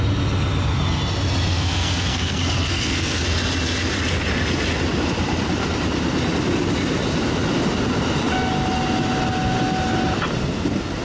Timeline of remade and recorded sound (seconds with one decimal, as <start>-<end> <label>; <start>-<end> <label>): 0.0-1.5 recorded; 1.5-3.2 remade; 3.2-11.0 recorded